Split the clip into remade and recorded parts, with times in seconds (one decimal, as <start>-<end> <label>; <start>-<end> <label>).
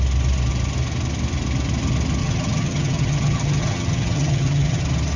0.0-2.2 recorded; 2.2-4.8 remade; 4.8-5.2 recorded